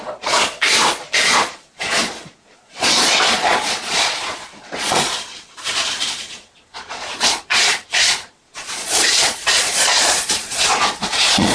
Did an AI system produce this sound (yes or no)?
yes